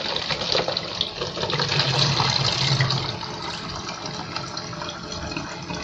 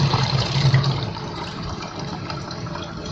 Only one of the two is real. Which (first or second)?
first